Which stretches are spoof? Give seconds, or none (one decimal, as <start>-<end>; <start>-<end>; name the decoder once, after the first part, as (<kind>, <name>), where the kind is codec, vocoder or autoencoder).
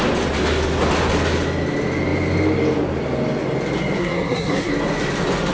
4.0-4.7 (codec, SNAC)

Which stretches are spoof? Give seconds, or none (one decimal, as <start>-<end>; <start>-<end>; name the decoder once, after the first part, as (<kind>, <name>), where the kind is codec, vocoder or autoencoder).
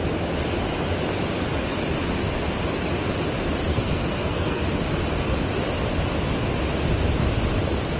3.7-4.6 (codec, SNAC)